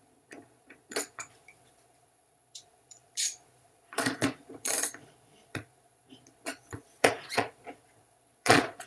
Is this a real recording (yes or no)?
no